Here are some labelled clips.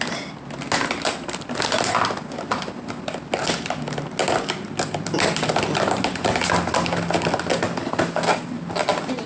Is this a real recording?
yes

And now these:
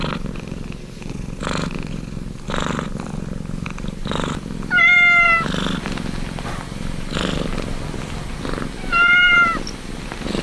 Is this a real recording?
yes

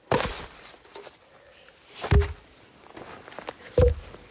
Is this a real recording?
yes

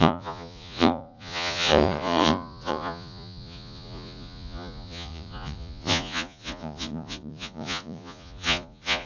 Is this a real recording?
no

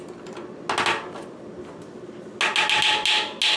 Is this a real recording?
yes